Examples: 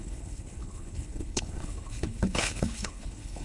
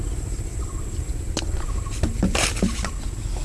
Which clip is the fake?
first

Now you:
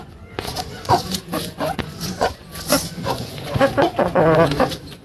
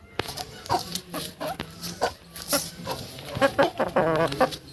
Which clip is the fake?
first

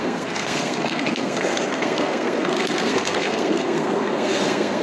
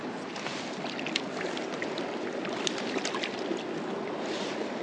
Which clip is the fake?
first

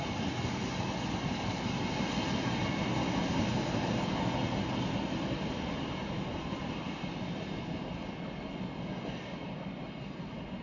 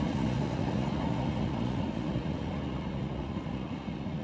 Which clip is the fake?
second